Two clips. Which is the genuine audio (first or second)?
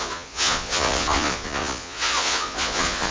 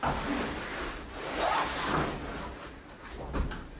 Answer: second